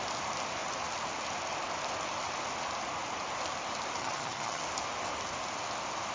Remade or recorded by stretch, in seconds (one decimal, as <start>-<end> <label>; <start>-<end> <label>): 0.0-4.0 recorded; 4.0-4.6 remade; 4.6-6.1 recorded